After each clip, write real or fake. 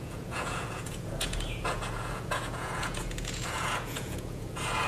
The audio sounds fake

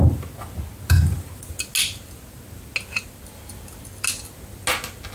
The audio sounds real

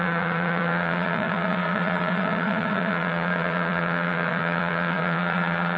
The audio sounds fake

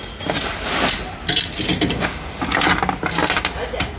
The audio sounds real